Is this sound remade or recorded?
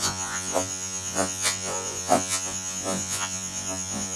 remade